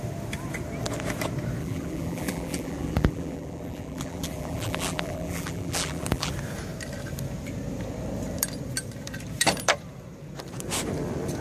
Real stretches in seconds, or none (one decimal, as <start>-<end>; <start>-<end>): 0.0-1.6; 6.3-11.4